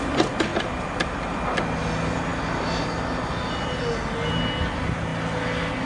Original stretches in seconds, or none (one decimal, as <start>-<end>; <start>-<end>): 0.0-5.9